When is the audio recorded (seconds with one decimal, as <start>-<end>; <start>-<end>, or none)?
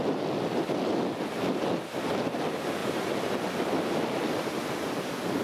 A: 0.0-5.4